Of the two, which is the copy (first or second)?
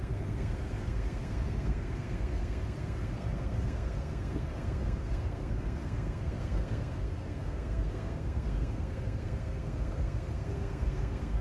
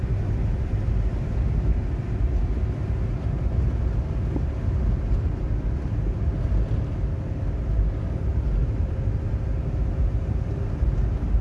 first